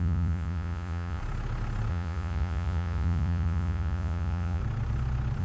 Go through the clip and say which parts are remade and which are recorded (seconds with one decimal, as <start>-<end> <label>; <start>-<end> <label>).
0.0-1.2 remade; 1.2-1.9 recorded; 1.9-4.6 remade; 4.6-5.4 recorded